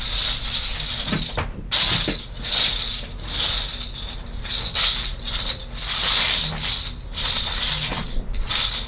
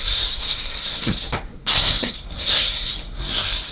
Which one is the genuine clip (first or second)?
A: first